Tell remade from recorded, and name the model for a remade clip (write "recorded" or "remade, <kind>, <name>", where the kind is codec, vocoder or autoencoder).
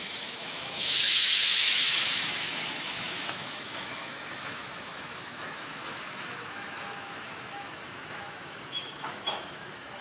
remade, autoencoder, DAC-VAE